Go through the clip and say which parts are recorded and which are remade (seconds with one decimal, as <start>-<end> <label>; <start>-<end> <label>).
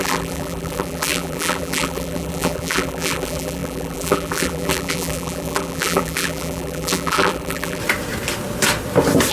0.0-7.8 remade; 7.8-9.3 recorded